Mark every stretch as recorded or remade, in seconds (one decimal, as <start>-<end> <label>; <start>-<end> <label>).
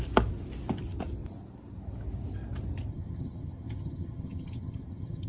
0.0-2.9 recorded; 2.9-5.3 remade